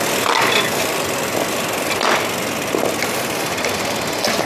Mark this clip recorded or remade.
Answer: recorded